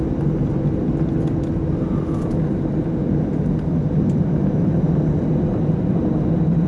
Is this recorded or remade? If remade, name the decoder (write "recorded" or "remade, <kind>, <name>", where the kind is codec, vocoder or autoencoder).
recorded